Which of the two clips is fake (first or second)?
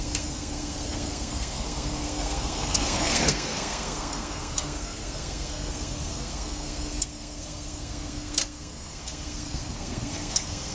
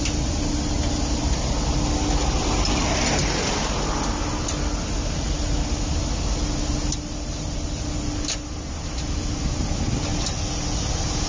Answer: first